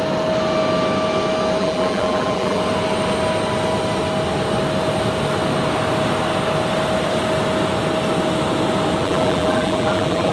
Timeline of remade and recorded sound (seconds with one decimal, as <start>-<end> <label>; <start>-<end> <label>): 0.0-1.6 recorded; 1.6-2.6 remade; 2.6-9.0 recorded; 9.0-10.3 remade